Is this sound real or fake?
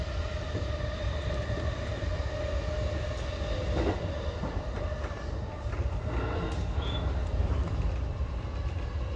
real